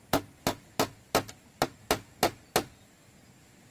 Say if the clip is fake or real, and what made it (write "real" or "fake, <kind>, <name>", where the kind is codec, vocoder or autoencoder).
real